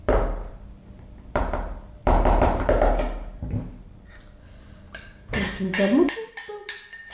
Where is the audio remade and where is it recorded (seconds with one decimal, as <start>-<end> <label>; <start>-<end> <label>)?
0.0-6.4 remade; 6.4-7.1 recorded